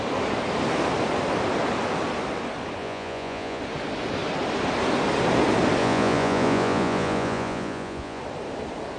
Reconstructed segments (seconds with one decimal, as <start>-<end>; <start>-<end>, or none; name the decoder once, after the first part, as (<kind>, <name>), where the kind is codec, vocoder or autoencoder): 2.8-3.6 (vocoder, Vocos); 5.8-8.2